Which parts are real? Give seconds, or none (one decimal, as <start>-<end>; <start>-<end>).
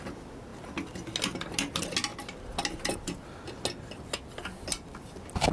0.0-5.5